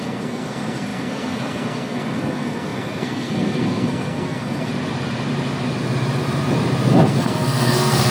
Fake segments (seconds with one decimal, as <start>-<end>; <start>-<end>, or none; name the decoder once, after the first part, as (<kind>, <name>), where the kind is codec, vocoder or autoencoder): 0.0-4.7 (codec, SNAC); 6.9-8.1